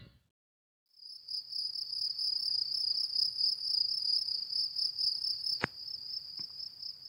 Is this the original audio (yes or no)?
yes